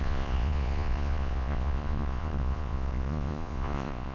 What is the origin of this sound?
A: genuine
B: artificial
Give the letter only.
B